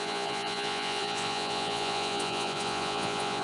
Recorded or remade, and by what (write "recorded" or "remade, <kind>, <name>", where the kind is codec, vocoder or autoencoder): remade, vocoder, Vocos